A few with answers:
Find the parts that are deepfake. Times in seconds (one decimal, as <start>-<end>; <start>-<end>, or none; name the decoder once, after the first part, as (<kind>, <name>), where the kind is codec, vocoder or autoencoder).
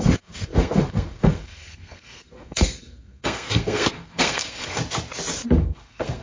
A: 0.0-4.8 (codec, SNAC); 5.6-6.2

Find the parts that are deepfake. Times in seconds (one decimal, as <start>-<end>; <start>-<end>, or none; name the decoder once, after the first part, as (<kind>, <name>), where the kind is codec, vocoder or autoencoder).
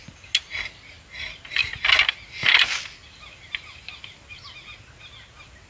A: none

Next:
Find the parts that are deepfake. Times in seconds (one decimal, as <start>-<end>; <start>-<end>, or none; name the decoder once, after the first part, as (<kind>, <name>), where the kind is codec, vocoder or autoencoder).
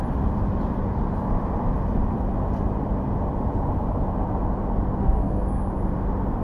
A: 5.0-5.6 (codec, SNAC)